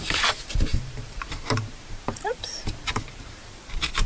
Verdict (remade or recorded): remade